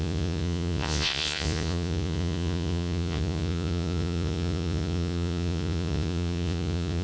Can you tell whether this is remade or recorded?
remade